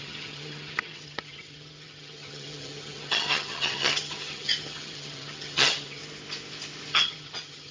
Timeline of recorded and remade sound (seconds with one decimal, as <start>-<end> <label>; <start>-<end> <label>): 0.0-6.0 remade; 6.0-6.9 recorded; 6.9-7.7 remade